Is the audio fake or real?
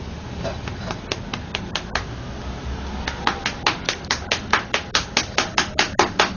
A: real